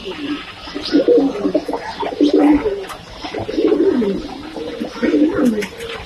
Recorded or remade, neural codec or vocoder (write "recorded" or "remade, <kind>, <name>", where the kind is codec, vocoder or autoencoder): recorded